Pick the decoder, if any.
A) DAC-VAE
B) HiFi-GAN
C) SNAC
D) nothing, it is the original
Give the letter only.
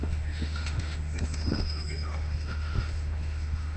A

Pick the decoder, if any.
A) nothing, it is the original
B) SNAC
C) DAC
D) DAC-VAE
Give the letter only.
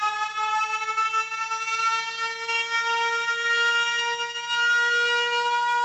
A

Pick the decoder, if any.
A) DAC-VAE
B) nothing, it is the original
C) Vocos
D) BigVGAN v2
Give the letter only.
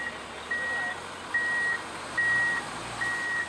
B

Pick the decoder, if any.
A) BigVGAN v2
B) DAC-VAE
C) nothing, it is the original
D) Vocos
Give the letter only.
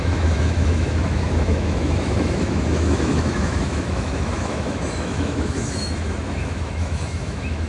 B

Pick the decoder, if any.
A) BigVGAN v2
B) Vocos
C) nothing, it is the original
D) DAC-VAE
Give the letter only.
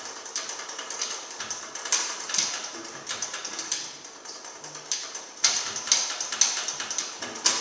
C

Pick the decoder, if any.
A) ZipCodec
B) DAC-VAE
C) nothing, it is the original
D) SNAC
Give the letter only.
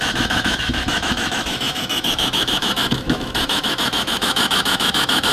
B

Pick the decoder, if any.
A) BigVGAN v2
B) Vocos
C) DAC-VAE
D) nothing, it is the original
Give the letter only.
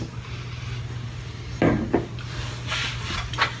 D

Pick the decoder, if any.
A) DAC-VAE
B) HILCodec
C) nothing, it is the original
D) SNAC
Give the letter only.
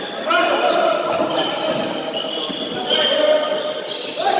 C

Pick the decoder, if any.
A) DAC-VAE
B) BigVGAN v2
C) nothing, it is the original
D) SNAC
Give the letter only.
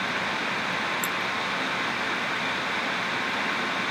C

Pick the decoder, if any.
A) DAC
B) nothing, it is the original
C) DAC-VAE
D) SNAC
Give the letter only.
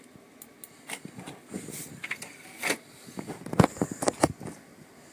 B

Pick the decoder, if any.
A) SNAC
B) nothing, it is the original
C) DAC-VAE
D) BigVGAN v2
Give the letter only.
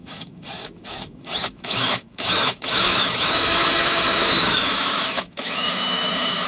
C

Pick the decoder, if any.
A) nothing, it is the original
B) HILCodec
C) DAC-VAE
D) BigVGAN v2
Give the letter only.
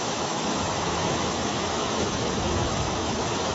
C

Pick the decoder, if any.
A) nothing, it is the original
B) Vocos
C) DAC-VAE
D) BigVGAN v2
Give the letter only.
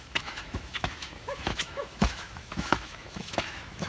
C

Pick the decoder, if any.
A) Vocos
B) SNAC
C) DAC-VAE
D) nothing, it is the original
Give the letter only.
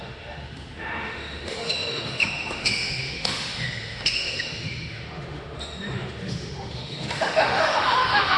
C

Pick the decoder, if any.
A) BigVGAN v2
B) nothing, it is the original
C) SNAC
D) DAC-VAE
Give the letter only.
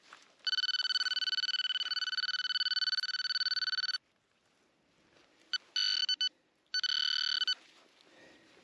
B